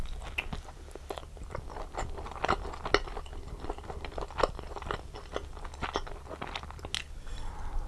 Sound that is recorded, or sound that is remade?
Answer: recorded